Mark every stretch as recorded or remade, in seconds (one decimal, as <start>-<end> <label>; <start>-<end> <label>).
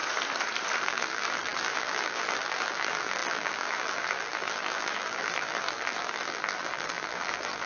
0.0-0.8 recorded; 0.8-7.7 remade